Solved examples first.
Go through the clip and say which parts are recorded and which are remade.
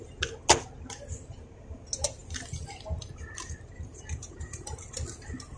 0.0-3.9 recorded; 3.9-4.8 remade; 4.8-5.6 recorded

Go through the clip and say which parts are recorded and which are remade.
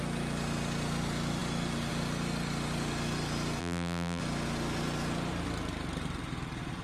0.0-3.6 recorded; 3.6-4.2 remade; 4.2-6.8 recorded